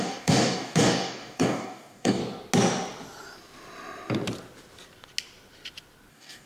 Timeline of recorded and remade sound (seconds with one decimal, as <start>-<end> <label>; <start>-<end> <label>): 0.0-2.2 remade; 2.2-6.1 recorded; 6.1-6.5 remade